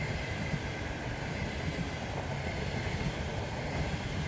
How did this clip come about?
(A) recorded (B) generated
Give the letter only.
B